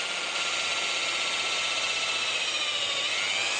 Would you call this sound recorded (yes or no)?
yes